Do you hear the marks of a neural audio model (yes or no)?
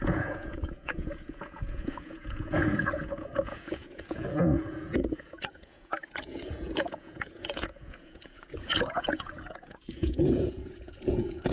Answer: yes